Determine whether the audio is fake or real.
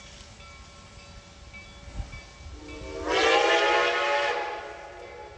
real